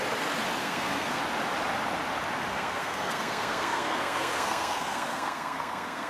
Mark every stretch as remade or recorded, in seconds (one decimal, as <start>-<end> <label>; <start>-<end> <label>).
0.0-0.6 recorded; 0.6-1.2 remade; 1.2-2.5 recorded; 2.5-6.1 remade